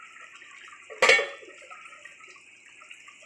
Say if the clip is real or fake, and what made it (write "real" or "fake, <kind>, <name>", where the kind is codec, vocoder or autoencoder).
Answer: real